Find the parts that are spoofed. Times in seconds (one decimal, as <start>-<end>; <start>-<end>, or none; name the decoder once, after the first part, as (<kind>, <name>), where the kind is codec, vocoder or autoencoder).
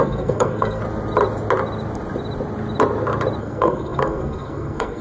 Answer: 0.0-0.8 (codec, SNAC); 3.4-5.0